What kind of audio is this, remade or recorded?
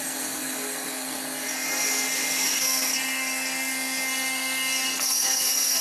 remade